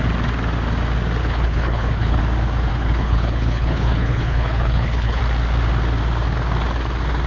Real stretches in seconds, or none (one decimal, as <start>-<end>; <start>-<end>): 0.0-1.2; 2.2-2.7; 5.2-7.3